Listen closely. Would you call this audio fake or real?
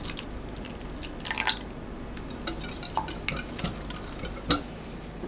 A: real